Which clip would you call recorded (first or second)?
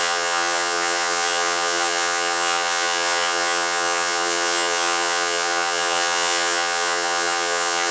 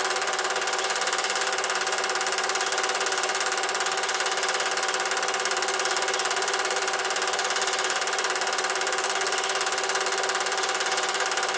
second